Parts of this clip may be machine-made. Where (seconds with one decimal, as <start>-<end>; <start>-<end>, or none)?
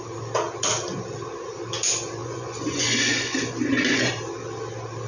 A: 2.2-4.1